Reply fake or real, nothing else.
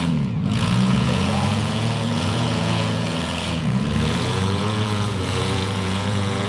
fake